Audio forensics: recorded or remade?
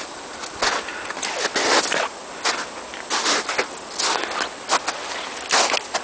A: recorded